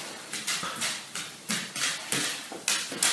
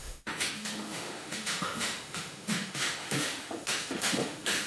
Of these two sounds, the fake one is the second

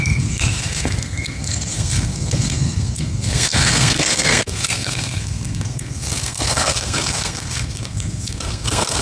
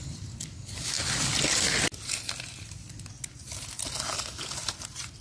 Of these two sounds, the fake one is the first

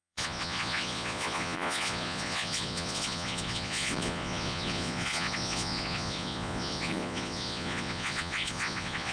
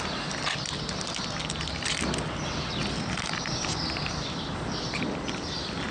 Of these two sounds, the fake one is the first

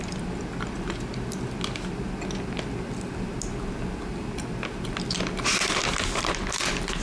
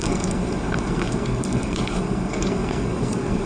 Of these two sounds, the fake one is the second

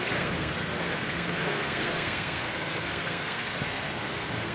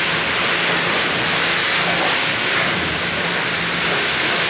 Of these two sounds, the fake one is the first